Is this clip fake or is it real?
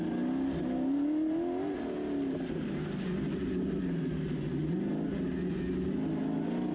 real